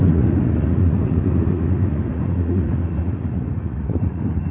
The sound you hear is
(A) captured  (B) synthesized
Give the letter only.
B